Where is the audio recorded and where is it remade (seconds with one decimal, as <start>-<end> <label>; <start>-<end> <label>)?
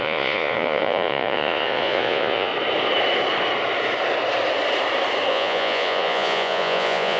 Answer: 0.0-2.5 remade; 2.5-5.3 recorded; 5.3-7.2 remade